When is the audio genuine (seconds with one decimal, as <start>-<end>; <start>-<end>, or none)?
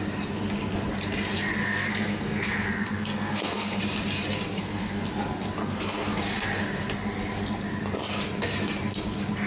0.0-1.6; 3.8-4.6; 5.1-5.6; 6.2-9.5